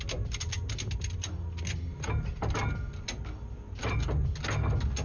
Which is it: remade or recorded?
recorded